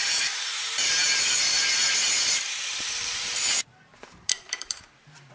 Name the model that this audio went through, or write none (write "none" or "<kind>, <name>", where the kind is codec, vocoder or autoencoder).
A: vocoder, BigVGAN v2